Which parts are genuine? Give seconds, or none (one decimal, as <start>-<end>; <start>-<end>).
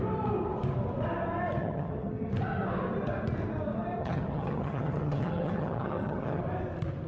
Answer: 0.0-1.6; 2.3-4.0; 6.4-7.1